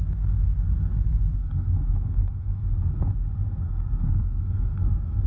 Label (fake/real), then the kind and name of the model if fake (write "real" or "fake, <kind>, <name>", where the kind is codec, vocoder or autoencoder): fake, codec, SNAC